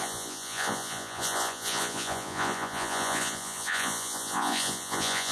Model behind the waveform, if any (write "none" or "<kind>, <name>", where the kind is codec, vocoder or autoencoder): vocoder, Vocos